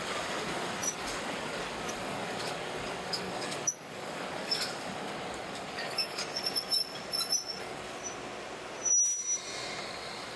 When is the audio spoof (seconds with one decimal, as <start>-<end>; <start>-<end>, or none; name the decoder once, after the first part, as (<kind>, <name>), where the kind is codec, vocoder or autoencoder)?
0.0-6.2 (codec, DAC); 7.6-8.0; 9.8-10.4